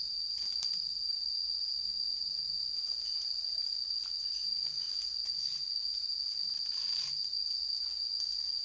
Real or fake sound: real